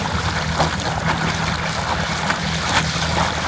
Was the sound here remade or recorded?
recorded